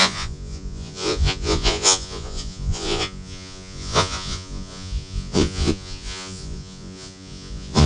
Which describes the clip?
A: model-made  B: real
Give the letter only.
A